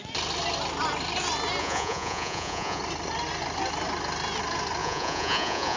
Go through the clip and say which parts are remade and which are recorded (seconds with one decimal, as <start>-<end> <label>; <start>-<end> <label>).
0.0-1.6 recorded; 1.6-2.8 remade; 2.8-4.8 recorded; 4.8-5.8 remade